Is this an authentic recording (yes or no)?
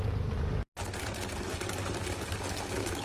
yes